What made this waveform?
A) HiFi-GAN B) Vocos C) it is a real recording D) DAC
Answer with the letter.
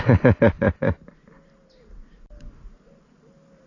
C